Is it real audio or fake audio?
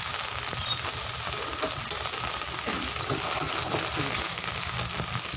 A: real